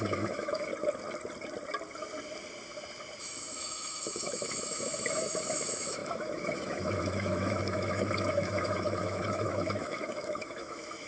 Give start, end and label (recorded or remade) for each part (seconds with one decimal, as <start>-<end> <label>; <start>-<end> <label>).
0.0-0.7 remade; 0.7-3.2 recorded; 3.2-11.1 remade